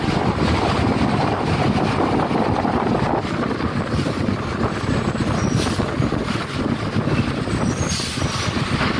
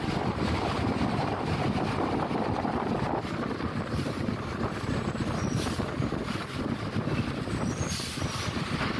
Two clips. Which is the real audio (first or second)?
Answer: first